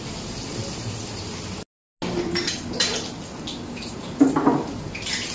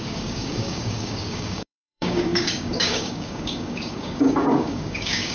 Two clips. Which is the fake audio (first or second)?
second